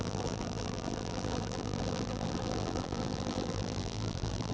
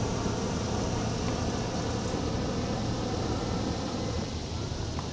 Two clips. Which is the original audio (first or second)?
second